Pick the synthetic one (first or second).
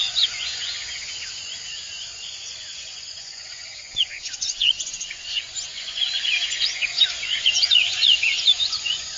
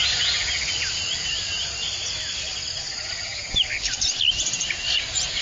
first